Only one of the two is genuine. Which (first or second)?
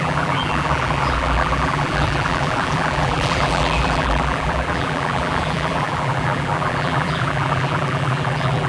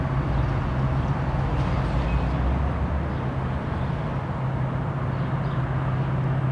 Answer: second